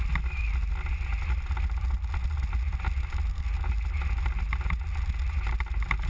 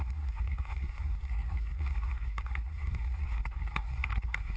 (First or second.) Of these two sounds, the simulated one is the second